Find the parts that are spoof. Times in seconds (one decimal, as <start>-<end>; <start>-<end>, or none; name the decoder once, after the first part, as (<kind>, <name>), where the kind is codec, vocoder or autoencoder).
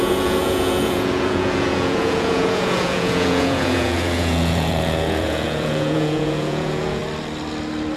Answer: 0.0-7.0 (vocoder, Vocos)